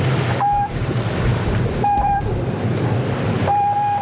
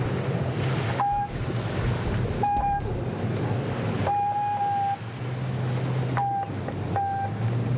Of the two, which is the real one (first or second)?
second